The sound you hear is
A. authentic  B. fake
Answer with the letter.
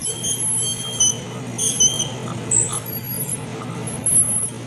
A